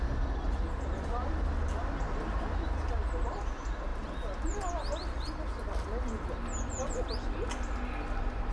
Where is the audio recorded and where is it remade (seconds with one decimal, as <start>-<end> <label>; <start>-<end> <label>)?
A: 0.0-8.5 recorded